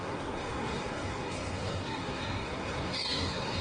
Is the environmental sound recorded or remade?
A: remade